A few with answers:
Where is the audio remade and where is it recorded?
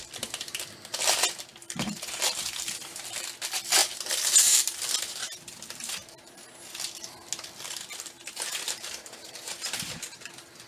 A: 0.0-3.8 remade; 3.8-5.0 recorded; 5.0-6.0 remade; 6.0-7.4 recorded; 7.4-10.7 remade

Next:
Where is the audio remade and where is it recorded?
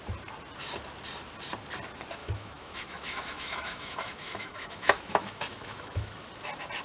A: 0.0-2.2 recorded; 2.2-6.3 remade; 6.3-6.8 recorded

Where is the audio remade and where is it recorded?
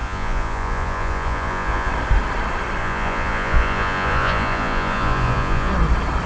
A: 0.0-1.9 remade; 1.9-2.8 recorded; 2.8-5.7 remade; 5.7-6.3 recorded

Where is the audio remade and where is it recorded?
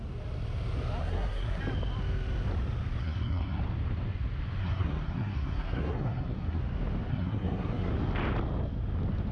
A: 0.0-1.0 recorded; 1.0-1.6 remade; 1.6-3.0 recorded; 3.0-3.6 remade; 3.6-4.6 recorded; 4.6-6.6 remade; 6.6-7.1 recorded; 7.1-7.9 remade; 7.9-9.3 recorded